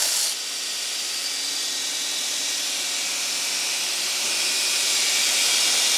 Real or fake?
real